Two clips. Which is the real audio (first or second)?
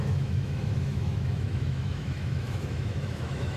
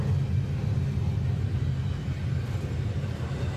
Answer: second